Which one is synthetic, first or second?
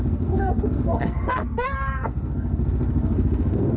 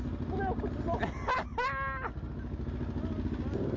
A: first